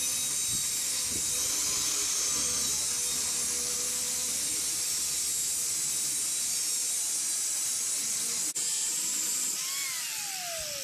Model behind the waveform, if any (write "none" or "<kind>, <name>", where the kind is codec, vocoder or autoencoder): none